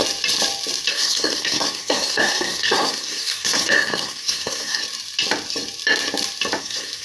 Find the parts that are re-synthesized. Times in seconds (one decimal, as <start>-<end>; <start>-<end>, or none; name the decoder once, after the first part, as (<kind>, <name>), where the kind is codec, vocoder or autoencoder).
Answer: 0.9-4.8 (codec, SNAC); 6.6-7.0